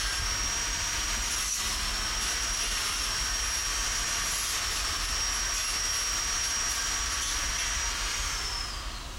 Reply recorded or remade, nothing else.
recorded